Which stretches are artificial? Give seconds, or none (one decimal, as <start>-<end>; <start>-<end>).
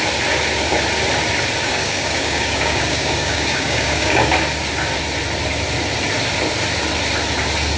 1.6-4.3